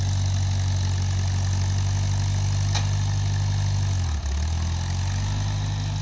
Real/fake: real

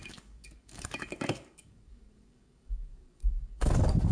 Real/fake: fake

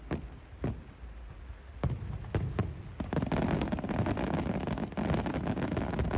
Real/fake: real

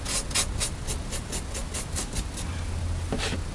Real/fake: real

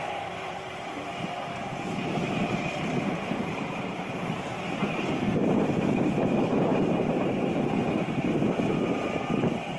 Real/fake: fake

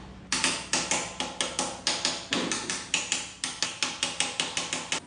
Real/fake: real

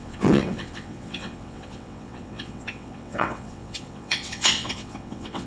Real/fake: fake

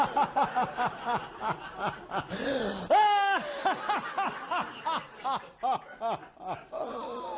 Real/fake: real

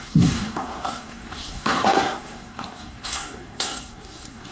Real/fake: fake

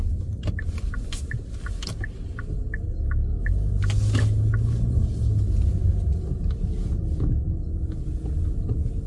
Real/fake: real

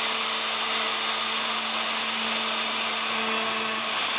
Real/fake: real